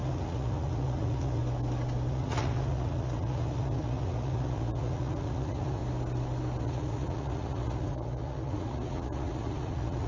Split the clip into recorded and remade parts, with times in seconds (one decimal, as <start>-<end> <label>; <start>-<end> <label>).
0.0-1.4 remade; 1.4-2.1 recorded; 2.1-5.8 remade; 5.8-6.6 recorded; 6.6-10.1 remade